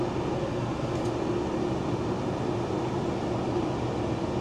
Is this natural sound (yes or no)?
yes